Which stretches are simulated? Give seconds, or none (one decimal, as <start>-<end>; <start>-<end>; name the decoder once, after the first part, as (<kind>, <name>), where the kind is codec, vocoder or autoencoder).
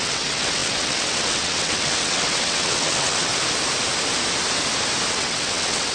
0.0-3.3 (vocoder, WaveNeXt); 5.1-5.9